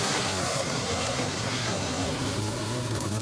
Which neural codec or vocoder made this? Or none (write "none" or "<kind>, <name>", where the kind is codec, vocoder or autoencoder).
codec, SNAC